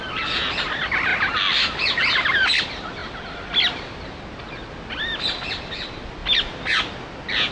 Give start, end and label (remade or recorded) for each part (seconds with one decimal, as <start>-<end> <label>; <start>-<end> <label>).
0.0-7.5 recorded